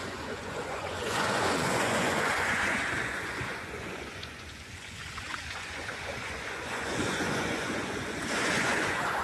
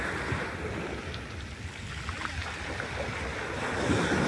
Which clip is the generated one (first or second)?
first